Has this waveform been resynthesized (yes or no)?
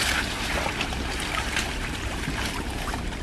no